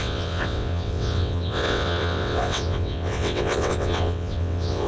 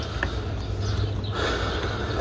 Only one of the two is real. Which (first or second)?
second